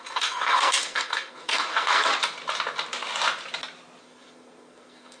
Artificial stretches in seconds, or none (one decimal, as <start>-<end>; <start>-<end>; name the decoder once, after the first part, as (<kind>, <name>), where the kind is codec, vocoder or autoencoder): 0.0-2.1 (codec, SNAC); 4.0-5.2